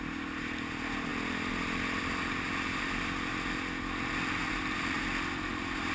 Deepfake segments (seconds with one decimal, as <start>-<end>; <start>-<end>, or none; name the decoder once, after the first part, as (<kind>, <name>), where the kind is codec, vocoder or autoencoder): none